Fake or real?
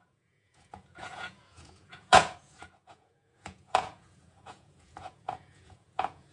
fake